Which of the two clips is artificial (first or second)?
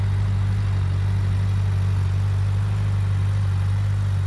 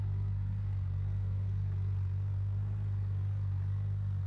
second